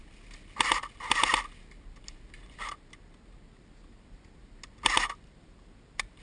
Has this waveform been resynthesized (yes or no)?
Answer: no